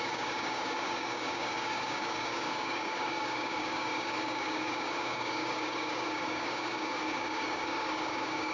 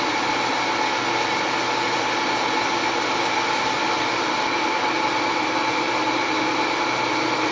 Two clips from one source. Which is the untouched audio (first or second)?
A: second